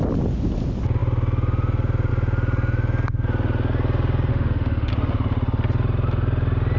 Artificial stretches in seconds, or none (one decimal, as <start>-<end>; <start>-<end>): 4.3-4.9